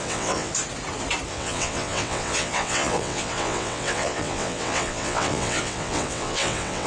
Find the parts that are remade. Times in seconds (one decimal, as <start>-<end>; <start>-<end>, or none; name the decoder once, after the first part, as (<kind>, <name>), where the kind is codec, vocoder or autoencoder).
0.0-0.5 (vocoder, WaveNeXt); 1.3-6.9